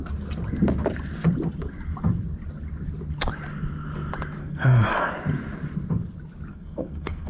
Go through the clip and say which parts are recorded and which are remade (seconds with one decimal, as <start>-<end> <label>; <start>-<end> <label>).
0.0-4.4 recorded; 4.4-5.1 remade; 5.1-6.5 recorded; 6.5-7.3 remade